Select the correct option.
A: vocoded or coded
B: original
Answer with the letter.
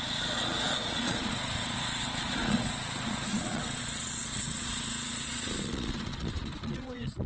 A